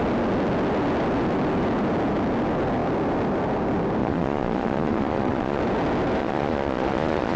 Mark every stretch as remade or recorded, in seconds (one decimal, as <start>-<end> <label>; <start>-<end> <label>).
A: 0.0-4.0 recorded; 4.0-5.6 remade; 5.6-6.2 recorded; 6.2-7.4 remade